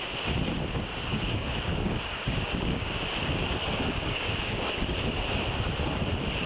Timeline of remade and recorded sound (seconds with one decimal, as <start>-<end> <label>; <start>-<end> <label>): 0.0-1.1 recorded; 1.1-5.0 remade; 5.0-6.5 recorded